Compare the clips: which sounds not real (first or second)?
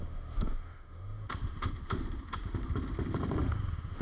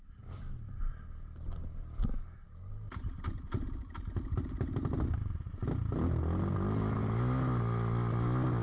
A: first